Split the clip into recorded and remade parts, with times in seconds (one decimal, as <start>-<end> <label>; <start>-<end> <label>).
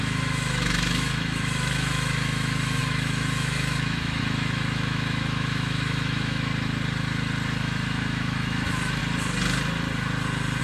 0.0-6.5 remade; 6.5-7.6 recorded; 7.6-9.0 remade; 9.0-10.6 recorded